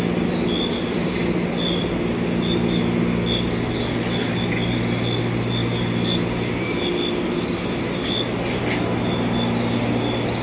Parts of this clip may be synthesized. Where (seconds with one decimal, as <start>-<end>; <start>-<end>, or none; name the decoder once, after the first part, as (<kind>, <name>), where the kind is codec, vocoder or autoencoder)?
none